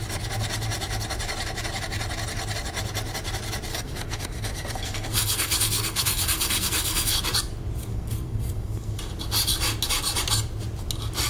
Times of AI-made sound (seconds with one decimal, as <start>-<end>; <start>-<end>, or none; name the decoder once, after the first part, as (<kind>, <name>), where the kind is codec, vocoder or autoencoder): 3.7-7.2 (codec, SNAC); 7.9-9.0